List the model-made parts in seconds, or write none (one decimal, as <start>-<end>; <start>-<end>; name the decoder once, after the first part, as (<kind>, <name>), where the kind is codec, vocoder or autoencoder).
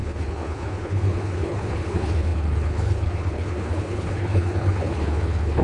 0.0-5.6 (codec, HILCodec)